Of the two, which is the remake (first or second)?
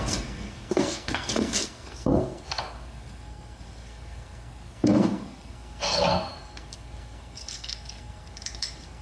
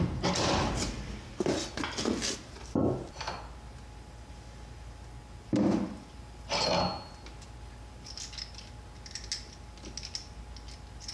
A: first